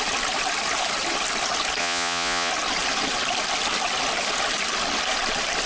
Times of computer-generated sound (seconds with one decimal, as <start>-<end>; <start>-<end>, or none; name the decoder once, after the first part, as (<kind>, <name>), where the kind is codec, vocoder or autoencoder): 1.8-2.5 (vocoder, Vocos)